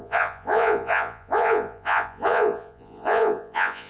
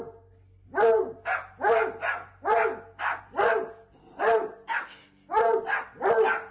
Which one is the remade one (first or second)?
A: first